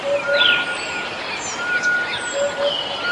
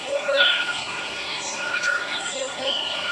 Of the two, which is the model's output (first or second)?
second